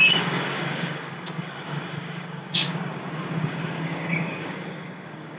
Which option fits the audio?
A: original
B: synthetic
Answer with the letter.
B